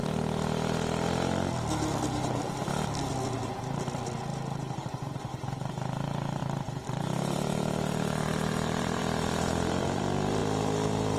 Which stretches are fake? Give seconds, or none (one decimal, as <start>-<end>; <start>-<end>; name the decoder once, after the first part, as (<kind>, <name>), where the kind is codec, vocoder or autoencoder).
4.3-5.7 (vocoder, BigVGAN v2); 6.4-10.0